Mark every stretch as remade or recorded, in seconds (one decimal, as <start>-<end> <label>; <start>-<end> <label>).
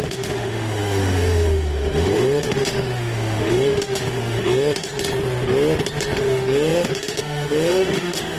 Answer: 0.0-4.9 remade; 4.9-6.2 recorded; 6.2-8.4 remade